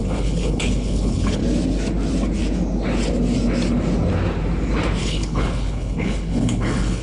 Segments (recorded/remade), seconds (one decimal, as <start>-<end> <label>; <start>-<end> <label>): 0.0-1.4 remade; 1.4-5.0 recorded; 5.0-7.0 remade